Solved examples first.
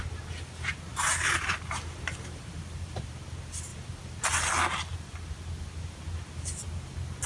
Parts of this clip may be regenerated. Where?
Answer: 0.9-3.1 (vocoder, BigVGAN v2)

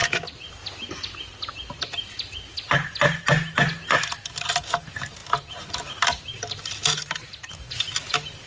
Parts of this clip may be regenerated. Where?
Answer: 3.2-6.9 (vocoder, BigVGAN v2); 7.5-8.5

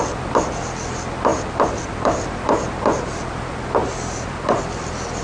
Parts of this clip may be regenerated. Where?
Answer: 1.3-2.3 (vocoder, BigVGAN v2); 3.8-4.6

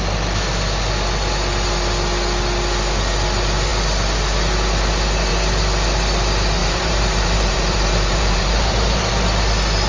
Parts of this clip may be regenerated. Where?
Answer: 6.6-9.1 (vocoder, BigVGAN v2)

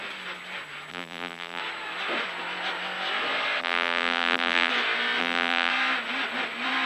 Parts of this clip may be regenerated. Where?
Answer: 0.9-1.6 (vocoder, BigVGAN v2); 3.6-4.7; 5.2-5.7

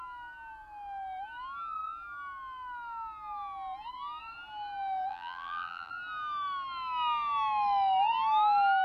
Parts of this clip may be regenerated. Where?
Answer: 5.1-5.9 (vocoder, BigVGAN v2)

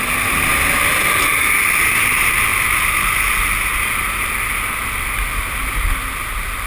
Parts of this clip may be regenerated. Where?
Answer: none

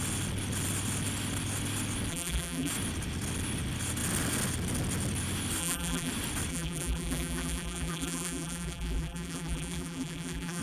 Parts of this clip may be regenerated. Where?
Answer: 2.1-2.7 (vocoder, BigVGAN v2); 5.6-6.1; 6.5-10.6